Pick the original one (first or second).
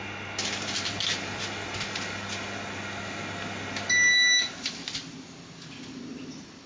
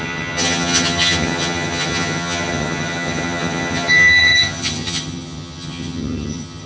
first